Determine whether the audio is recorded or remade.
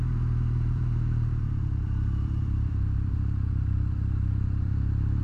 remade